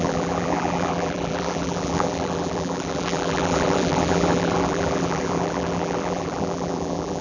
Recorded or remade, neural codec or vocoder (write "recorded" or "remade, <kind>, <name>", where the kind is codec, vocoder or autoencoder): remade, vocoder, BigVGAN v2